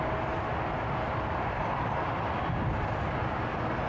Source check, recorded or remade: recorded